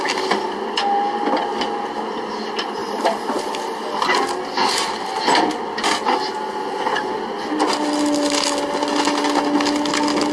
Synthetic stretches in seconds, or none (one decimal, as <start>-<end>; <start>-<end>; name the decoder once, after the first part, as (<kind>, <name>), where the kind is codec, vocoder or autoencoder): none